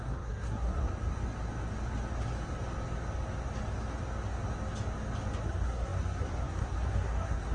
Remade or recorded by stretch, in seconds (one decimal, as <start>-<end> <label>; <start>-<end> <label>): 0.0-0.9 remade; 0.9-5.4 recorded; 5.4-7.5 remade